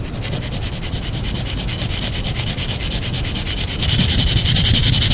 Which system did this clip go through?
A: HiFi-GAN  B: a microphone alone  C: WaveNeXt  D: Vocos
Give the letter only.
B